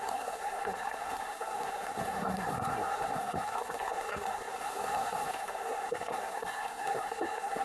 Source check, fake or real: fake